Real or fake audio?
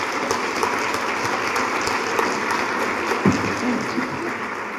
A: real